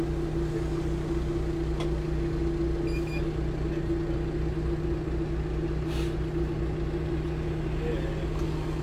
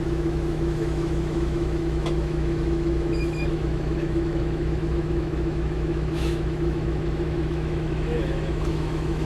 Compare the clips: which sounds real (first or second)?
first